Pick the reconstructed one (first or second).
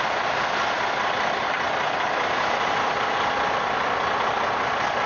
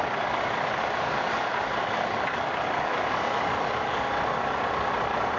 second